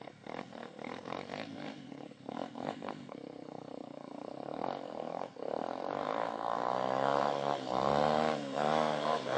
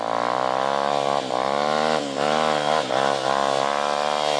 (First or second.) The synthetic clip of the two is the first